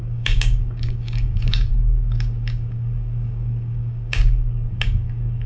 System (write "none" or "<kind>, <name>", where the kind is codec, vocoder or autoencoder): codec, DAC